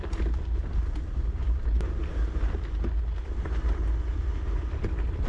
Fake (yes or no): no